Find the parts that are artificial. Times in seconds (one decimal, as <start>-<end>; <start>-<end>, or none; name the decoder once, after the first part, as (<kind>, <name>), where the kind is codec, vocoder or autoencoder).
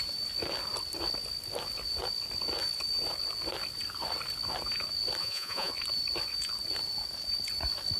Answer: 5.2-5.7 (vocoder, Vocos)